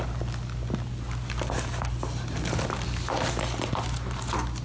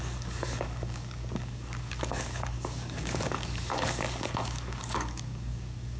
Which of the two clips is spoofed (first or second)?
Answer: second